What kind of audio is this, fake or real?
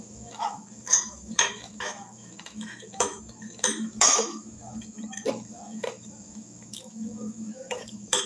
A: fake